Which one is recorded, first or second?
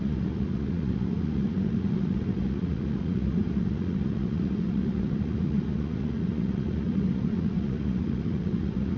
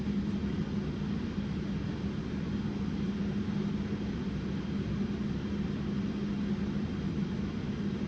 second